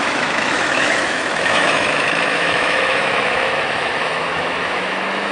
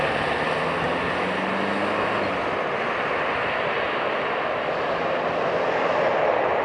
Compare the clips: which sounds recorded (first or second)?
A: second